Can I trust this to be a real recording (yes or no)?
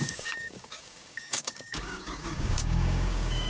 no